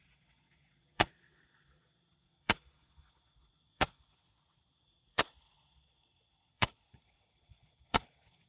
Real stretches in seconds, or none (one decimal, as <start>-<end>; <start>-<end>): none